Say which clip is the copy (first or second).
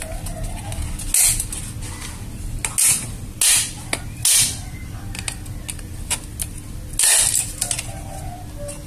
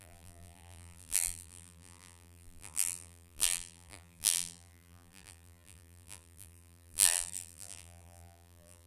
second